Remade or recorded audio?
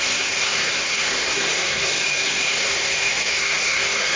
remade